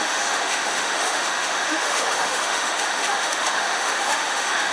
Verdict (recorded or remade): remade